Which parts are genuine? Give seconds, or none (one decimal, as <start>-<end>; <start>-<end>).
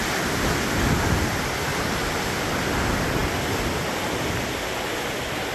0.0-1.7; 2.7-5.5